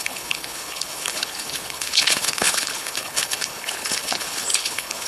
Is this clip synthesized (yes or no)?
yes